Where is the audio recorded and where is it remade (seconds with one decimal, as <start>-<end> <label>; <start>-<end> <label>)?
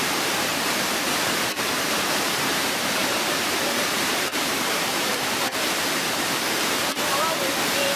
0.0-8.0 remade